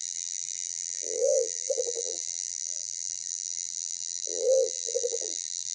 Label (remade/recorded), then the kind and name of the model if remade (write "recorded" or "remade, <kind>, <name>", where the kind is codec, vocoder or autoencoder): remade, vocoder, BigVGAN v2